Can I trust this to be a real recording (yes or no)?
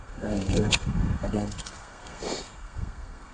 no